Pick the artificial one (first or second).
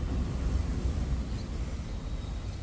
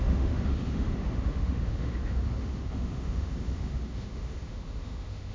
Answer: second